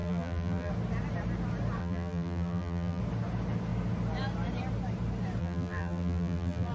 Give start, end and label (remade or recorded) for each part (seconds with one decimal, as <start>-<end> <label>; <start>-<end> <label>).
0.0-0.7 remade; 0.7-1.8 recorded; 1.8-3.0 remade; 3.0-5.4 recorded; 5.4-6.7 remade